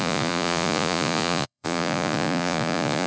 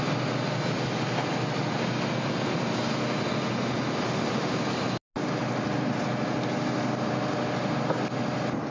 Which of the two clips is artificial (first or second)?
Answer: first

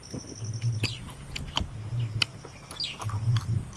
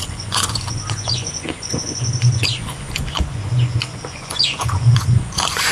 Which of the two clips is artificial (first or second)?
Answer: second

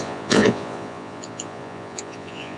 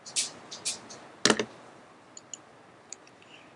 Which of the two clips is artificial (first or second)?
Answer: first